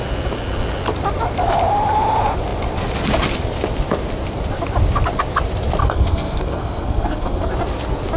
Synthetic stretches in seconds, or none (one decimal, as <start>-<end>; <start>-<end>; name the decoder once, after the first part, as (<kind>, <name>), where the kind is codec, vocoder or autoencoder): 5.8-7.5 (codec, SNAC)